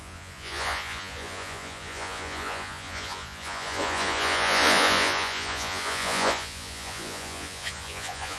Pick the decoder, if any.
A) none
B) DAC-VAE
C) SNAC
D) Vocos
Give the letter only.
D